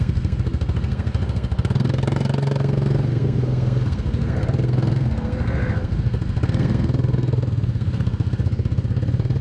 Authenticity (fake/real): fake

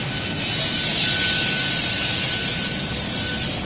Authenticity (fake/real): real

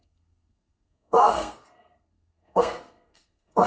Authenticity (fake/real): fake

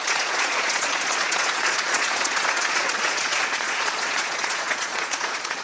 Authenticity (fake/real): fake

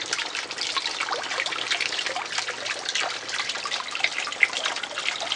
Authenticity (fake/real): real